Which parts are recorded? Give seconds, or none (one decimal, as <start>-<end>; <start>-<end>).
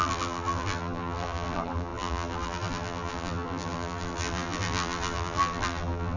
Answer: none